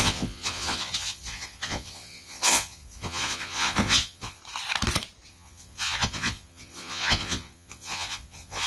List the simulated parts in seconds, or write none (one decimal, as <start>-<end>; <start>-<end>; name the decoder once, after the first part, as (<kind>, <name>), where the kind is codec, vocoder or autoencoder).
0.0-4.4 (vocoder, Vocos); 5.3-8.7